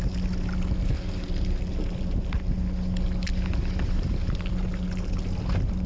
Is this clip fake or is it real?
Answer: real